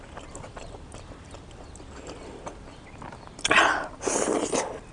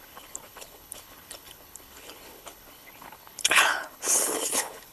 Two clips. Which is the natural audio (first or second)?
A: first